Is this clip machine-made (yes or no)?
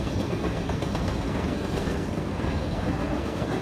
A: yes